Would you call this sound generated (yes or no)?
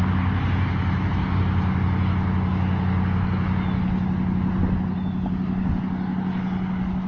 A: no